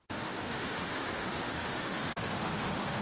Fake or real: fake